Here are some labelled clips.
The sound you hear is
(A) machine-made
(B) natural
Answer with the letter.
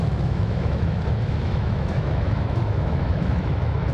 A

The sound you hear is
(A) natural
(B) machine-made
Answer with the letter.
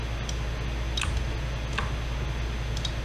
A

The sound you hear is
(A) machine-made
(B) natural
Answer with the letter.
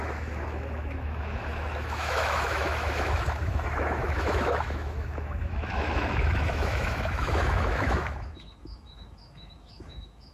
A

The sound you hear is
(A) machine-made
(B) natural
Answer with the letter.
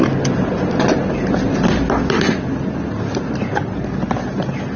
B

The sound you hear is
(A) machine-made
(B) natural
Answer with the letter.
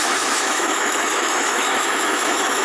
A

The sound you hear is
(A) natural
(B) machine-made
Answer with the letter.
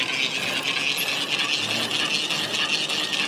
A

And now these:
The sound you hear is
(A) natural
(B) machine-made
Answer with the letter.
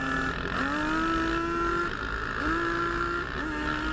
A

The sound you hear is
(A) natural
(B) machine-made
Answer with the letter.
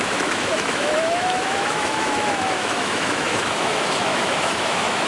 B